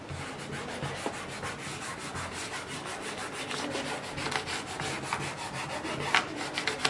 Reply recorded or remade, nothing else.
recorded